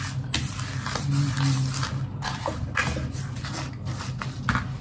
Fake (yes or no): no